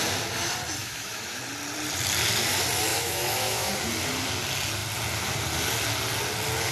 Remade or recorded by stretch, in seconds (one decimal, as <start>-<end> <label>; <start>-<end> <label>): 0.0-0.8 recorded; 0.8-1.4 remade; 1.4-2.9 recorded; 2.9-3.7 remade; 3.7-6.7 recorded